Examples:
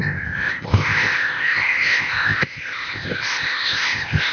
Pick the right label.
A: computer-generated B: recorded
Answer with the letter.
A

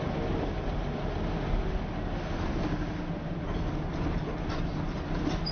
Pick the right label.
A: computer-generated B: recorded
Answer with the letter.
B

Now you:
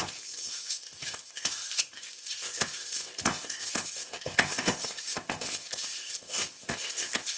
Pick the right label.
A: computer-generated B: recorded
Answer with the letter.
A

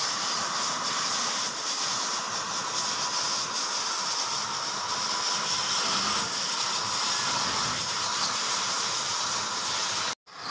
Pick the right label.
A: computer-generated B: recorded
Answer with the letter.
B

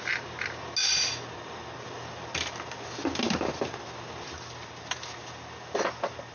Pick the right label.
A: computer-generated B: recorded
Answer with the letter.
B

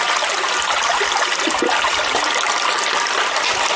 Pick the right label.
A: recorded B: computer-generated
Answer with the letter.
A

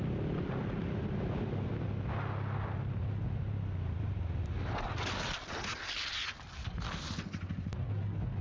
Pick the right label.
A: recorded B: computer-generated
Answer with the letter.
A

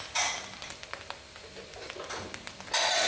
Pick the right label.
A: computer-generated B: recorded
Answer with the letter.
B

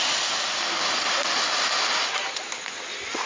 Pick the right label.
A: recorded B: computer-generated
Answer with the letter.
A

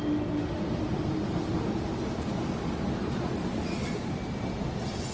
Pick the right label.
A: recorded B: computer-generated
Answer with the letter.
A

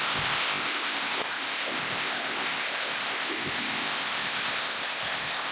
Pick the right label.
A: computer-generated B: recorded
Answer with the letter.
A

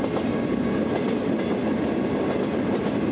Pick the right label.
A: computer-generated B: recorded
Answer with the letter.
B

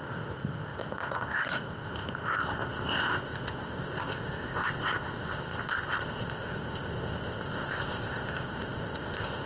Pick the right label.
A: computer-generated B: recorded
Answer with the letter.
A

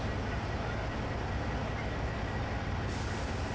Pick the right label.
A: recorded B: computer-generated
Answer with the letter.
A